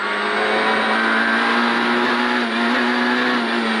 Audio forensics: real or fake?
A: real